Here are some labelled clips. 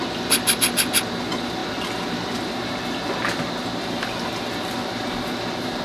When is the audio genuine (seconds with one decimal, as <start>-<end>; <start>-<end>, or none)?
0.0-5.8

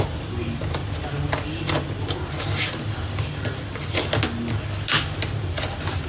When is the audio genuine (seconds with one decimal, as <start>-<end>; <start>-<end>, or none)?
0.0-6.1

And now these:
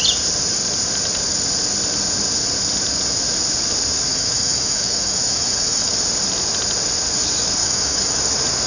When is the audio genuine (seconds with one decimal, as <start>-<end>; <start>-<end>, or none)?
0.0-4.1; 5.9-7.6; 8.2-8.7

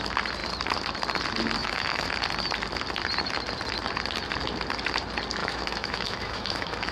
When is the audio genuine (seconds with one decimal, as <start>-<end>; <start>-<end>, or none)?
0.0-1.6; 2.1-5.4

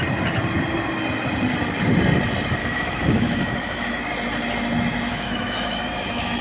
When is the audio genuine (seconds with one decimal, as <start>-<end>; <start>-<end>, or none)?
0.0-2.6; 4.0-5.1

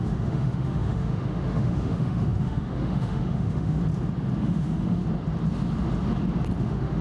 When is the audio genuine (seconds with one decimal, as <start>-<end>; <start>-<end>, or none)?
3.8-4.4; 5.0-6.6

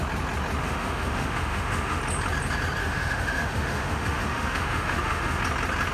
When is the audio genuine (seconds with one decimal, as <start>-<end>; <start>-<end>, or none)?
0.0-0.6; 2.0-2.8; 5.4-5.9

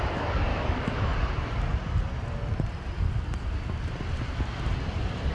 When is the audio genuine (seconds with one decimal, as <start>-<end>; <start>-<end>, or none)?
0.0-0.5; 1.1-5.3